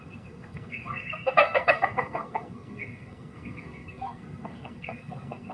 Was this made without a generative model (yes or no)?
no